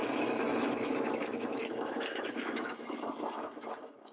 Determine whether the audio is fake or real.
fake